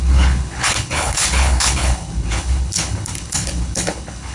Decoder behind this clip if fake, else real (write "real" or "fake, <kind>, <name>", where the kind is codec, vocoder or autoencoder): fake, codec, HILCodec